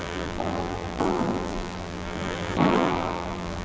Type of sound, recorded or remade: remade